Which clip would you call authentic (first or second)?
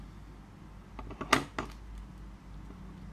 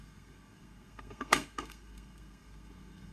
first